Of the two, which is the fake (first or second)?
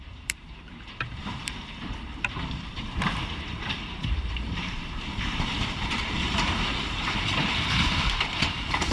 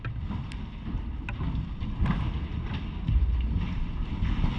first